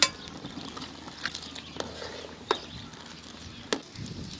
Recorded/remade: recorded